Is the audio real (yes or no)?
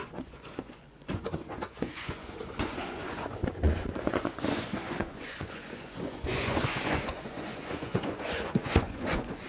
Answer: no